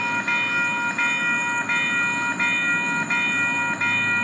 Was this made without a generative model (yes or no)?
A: yes